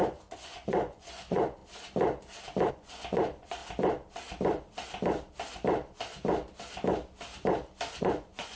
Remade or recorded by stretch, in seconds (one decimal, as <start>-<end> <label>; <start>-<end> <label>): 0.0-1.6 remade; 1.6-2.7 recorded; 2.7-3.6 remade; 3.6-8.0 recorded; 8.0-8.6 remade